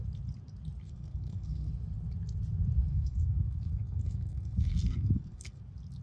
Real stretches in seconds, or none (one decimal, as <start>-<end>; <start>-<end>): 0.0-0.8; 1.7-2.9; 5.6-6.0